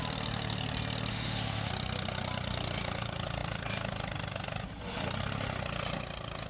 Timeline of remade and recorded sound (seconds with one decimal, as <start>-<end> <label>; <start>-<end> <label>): 0.0-1.1 recorded; 1.1-1.7 remade; 1.7-6.5 recorded